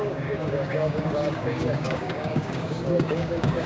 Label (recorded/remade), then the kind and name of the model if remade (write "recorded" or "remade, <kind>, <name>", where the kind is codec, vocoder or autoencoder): remade, codec, DAC